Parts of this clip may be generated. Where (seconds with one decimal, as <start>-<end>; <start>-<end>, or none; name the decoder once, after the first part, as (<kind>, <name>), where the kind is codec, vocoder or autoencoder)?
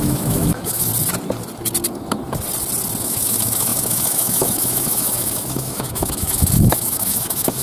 0.0-0.9 (autoencoder, DAC-VAE); 3.0-7.6